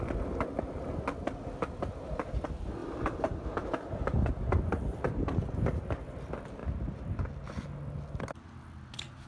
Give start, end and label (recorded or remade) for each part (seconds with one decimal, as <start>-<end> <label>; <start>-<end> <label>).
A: 0.0-2.8 recorded; 2.8-4.3 remade; 4.3-9.3 recorded